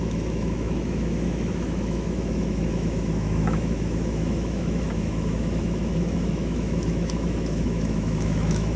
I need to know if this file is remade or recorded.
remade